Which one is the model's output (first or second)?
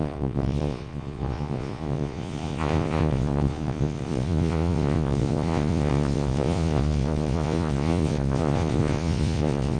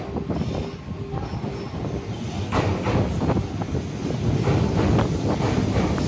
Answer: first